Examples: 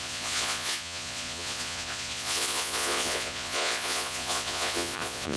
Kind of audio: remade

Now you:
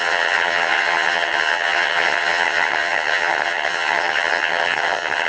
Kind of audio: remade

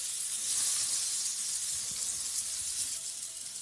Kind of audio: recorded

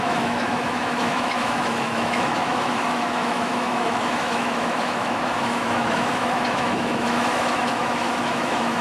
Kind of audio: remade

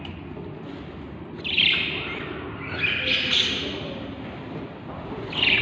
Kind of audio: recorded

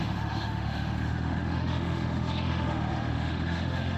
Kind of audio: remade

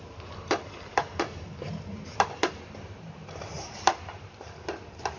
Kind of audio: remade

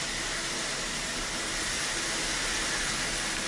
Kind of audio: recorded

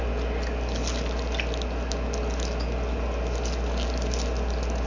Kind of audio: recorded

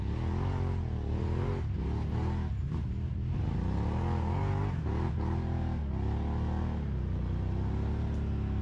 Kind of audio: recorded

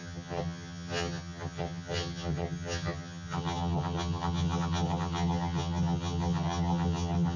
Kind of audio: remade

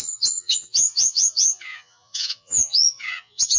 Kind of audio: remade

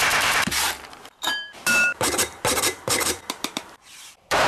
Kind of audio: remade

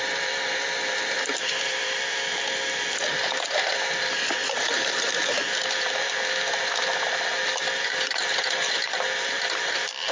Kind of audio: recorded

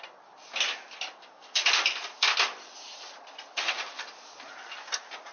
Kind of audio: recorded